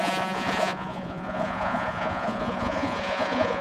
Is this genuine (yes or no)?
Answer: no